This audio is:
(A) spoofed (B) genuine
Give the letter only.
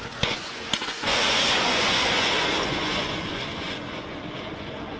A